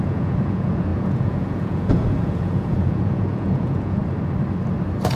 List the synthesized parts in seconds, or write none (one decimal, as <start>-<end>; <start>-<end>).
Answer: 0.0-4.0